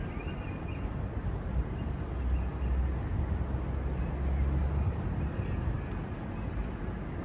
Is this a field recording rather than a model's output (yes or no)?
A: yes